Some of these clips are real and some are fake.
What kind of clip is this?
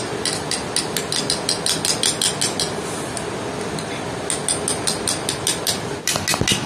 real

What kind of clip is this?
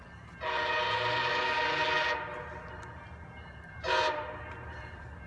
real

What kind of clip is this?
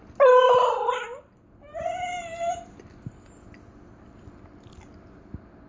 real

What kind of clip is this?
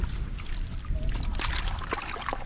real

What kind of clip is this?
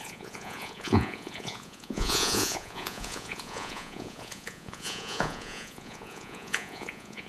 fake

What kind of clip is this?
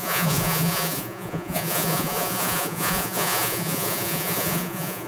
fake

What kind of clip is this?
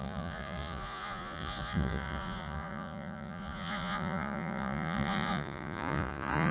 fake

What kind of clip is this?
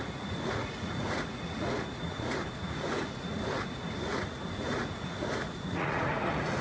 fake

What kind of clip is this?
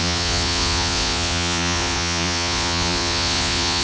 fake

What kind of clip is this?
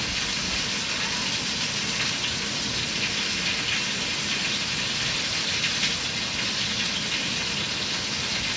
real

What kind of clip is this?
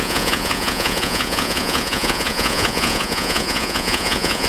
fake